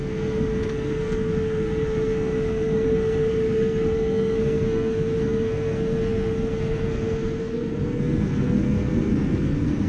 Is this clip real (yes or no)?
no